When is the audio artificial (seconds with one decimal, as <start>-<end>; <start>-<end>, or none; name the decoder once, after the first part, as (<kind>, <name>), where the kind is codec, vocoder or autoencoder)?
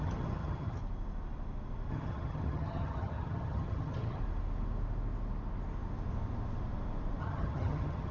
0.0-0.8 (vocoder, HiFi-GAN); 1.9-4.2; 7.2-8.1